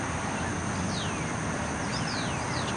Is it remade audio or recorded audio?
recorded